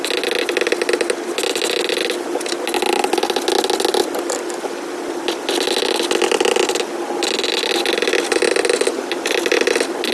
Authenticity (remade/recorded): recorded